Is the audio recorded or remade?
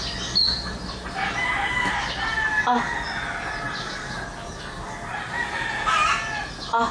recorded